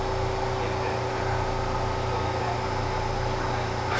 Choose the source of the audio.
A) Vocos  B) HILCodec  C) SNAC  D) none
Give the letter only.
D